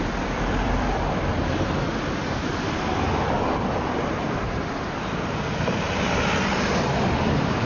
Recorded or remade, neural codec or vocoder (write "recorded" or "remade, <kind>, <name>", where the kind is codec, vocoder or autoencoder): recorded